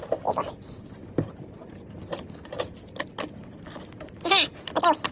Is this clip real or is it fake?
real